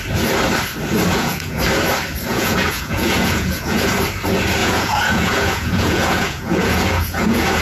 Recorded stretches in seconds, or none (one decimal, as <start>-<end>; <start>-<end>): 0.0-1.1; 1.6-2.3; 3.9-4.6